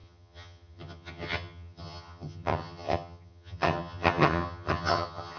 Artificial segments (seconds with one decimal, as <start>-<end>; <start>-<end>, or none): 0.0-5.4